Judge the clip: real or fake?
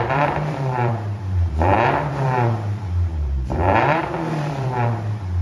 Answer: fake